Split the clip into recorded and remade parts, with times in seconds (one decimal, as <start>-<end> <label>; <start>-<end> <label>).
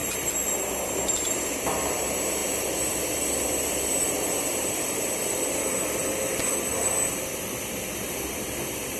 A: 0.0-9.0 remade